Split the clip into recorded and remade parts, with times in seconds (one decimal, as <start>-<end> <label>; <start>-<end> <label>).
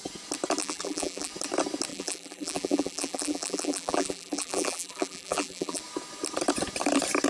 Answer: 0.0-0.6 recorded; 0.6-1.3 remade; 1.3-1.9 recorded; 1.9-5.8 remade; 5.8-7.3 recorded